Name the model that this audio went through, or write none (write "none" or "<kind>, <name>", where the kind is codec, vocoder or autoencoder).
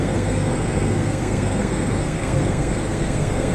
codec, SNAC